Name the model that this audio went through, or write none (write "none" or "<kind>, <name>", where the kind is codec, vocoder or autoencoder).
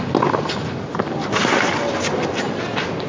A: none